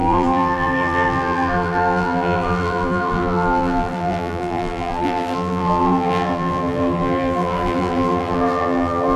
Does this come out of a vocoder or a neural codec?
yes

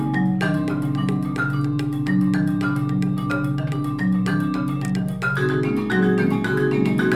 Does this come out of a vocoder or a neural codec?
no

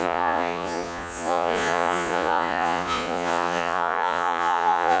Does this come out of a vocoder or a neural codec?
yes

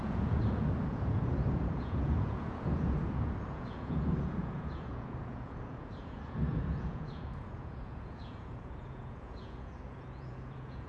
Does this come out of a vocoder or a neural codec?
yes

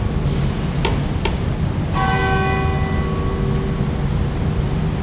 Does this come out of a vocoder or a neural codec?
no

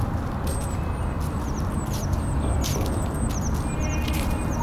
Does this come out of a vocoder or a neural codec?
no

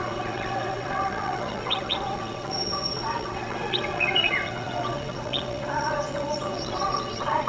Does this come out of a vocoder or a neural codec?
yes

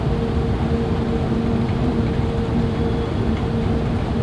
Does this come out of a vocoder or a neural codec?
no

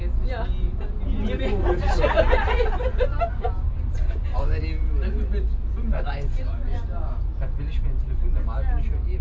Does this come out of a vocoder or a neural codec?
no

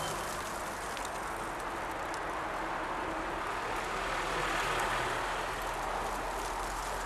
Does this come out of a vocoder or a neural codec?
no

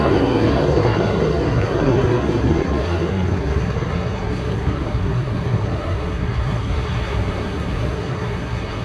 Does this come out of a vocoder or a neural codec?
yes